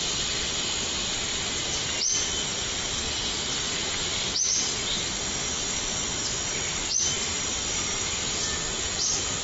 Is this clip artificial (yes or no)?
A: no